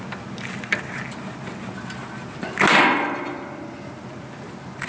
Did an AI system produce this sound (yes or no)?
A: no